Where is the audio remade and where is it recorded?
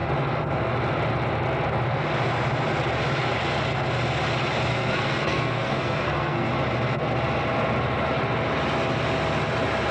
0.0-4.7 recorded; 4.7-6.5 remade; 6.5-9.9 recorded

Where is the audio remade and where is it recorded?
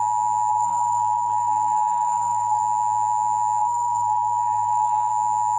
0.0-0.5 recorded; 0.5-2.6 remade; 2.6-3.6 recorded; 3.6-5.1 remade; 5.1-5.6 recorded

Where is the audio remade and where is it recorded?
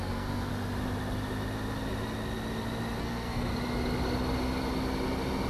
0.0-0.5 remade; 0.5-3.0 recorded; 3.0-3.5 remade; 3.5-5.5 recorded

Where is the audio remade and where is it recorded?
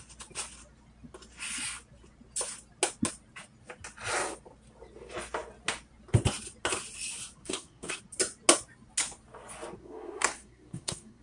0.0-7.4 recorded; 7.4-8.0 remade; 8.0-9.8 recorded; 9.8-11.2 remade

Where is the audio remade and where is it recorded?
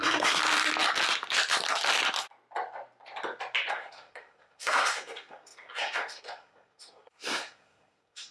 0.0-0.4 remade; 0.4-3.7 recorded; 3.7-8.3 remade